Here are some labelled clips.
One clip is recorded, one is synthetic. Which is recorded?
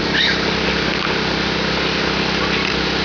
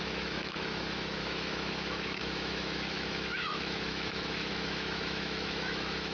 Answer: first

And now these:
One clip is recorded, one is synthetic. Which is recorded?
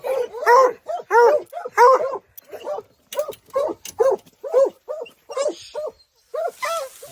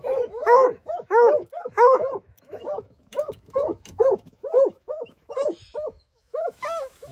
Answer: first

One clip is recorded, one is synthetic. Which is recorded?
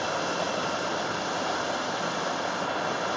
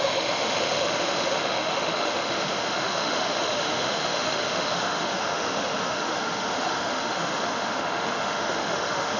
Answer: first